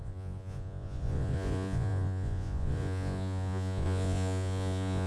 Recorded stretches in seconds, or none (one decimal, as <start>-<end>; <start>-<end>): none